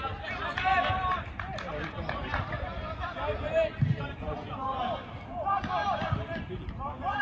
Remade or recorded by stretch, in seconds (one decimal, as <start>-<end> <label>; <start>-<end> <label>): 0.0-7.2 recorded

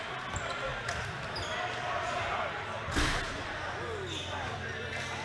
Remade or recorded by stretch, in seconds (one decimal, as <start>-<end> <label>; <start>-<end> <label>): 0.0-5.2 recorded

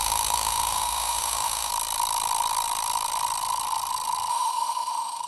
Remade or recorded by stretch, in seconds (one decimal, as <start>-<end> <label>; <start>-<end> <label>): 0.0-1.7 remade; 1.7-4.3 recorded; 4.3-5.3 remade

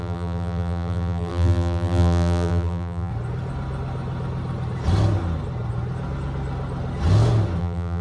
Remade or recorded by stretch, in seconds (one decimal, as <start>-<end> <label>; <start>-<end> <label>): 0.0-3.1 remade; 3.1-7.6 recorded; 7.6-8.0 remade

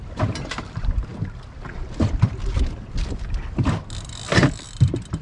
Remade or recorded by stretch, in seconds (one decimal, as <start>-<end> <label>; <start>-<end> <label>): 0.0-5.2 recorded

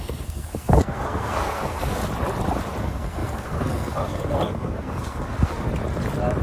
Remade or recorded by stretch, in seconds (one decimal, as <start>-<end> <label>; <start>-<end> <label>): 0.0-2.0 remade; 2.0-2.8 recorded; 2.8-5.7 remade; 5.7-6.4 recorded

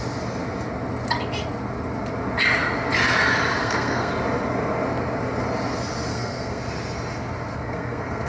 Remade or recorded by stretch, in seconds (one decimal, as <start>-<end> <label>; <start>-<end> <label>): 0.0-3.6 recorded; 3.6-4.1 remade; 4.1-6.1 recorded; 6.1-6.6 remade; 6.6-7.5 recorded; 7.5-8.3 remade

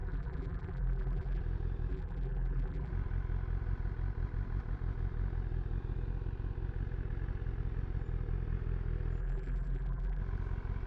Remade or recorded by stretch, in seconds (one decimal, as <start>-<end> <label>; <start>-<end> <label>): 0.0-1.4 remade; 1.4-1.9 recorded; 1.9-2.9 remade; 2.9-9.2 recorded; 9.2-10.2 remade; 10.2-10.9 recorded